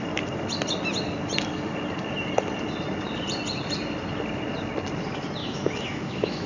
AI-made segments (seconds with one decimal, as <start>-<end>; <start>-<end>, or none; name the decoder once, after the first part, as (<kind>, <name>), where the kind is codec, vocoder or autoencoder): 5.4-6.5 (autoencoder, DAC-VAE)